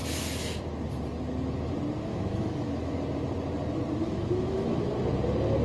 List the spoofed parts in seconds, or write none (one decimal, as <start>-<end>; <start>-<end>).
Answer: 0.0-0.6; 2.1-2.9; 4.0-4.9